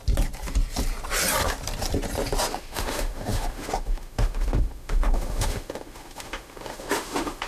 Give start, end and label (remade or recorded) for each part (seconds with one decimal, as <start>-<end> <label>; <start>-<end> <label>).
0.0-2.5 recorded; 2.5-7.5 remade